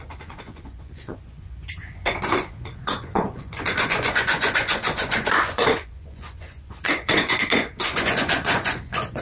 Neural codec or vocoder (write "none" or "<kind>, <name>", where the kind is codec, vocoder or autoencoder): vocoder, Vocos